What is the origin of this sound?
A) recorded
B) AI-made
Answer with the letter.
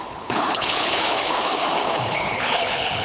B